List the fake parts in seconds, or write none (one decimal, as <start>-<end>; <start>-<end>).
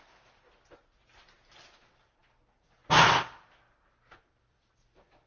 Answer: none